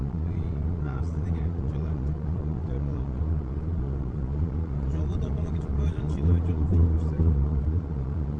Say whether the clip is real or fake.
fake